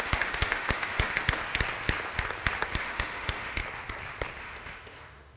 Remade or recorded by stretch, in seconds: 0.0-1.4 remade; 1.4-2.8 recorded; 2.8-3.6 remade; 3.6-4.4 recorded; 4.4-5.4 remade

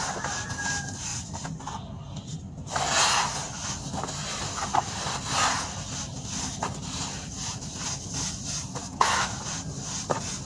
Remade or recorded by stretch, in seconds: 0.0-8.8 recorded; 8.8-9.4 remade; 9.4-10.4 recorded

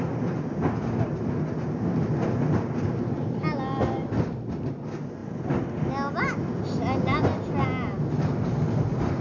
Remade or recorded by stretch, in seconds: 0.0-9.2 recorded